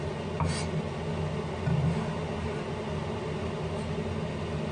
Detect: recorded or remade recorded